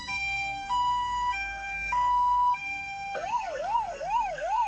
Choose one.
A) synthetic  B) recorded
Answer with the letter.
A